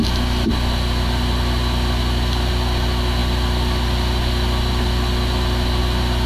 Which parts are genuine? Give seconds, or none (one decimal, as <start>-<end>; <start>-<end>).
0.0-6.3